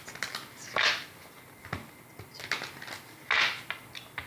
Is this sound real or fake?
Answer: real